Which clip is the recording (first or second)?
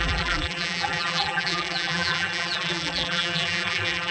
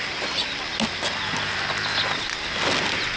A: second